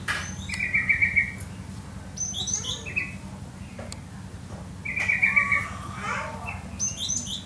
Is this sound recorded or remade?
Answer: recorded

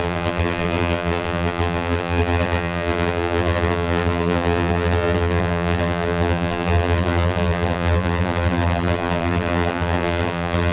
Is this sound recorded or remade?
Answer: remade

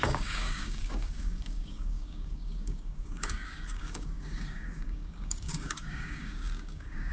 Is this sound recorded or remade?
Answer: remade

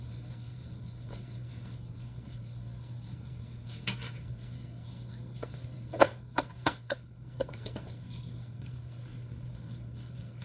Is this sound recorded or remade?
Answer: remade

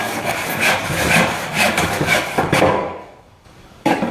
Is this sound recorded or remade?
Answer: remade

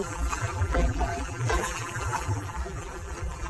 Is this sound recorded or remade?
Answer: remade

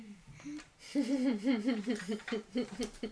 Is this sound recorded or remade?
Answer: remade